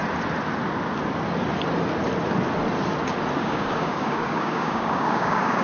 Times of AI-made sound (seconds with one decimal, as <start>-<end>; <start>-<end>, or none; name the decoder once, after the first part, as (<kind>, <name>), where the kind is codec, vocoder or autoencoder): 3.4-5.6 (codec, DAC)